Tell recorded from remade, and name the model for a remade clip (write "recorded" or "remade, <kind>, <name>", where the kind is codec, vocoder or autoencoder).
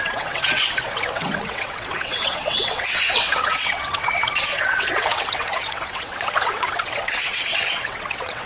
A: remade, vocoder, WaveNeXt